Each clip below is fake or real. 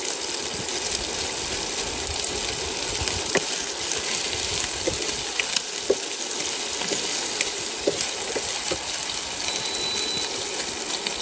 real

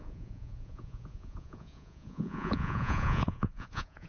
fake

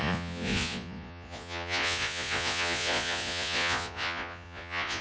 fake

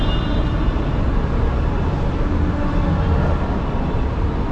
real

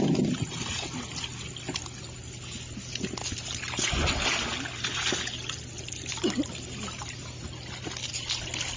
real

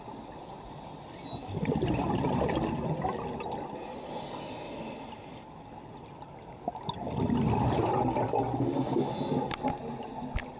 real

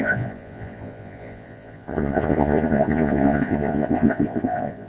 fake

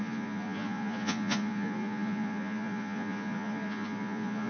fake